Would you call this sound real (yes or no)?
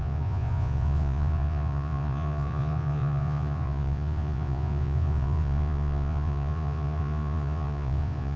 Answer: no